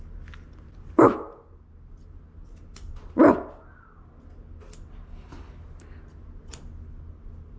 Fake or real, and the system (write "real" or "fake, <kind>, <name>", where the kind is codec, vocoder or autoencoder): real